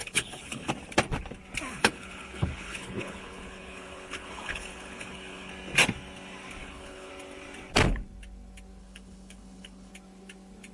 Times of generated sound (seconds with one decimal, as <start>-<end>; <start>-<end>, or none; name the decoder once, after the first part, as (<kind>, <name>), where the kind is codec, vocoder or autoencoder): 0.0-0.7 (codec, HILCodec); 1.7-5.5; 6.6-7.1; 8.8-9.9